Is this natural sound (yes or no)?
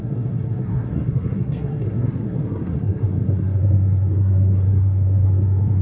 no